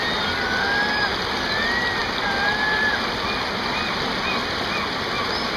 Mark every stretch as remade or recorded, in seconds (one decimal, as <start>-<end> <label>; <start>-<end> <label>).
0.0-5.6 recorded